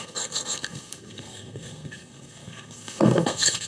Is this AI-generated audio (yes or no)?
yes